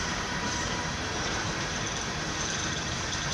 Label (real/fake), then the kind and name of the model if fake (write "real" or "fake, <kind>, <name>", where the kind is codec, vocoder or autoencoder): fake, vocoder, BigVGAN v2